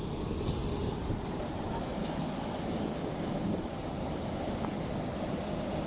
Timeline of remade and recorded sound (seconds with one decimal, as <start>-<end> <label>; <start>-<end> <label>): 0.0-0.8 recorded; 0.8-2.2 remade; 2.2-3.3 recorded; 3.3-5.4 remade; 5.4-5.9 recorded